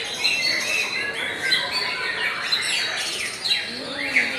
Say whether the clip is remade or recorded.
recorded